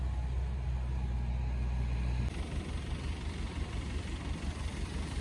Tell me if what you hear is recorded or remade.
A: recorded